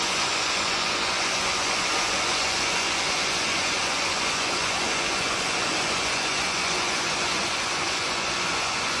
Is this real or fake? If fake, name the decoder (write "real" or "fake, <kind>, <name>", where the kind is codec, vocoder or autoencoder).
fake, vocoder, Vocos